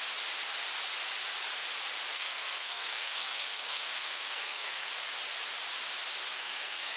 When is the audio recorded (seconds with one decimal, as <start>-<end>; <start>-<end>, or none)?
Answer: 0.0-2.1; 4.9-6.3